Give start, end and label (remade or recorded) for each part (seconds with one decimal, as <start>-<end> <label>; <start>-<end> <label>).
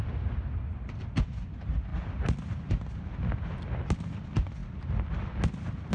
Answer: 0.0-5.9 recorded